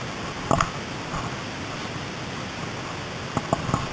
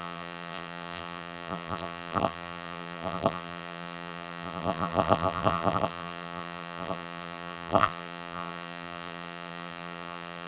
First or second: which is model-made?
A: second